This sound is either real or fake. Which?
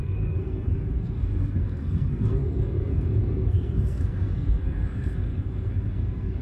fake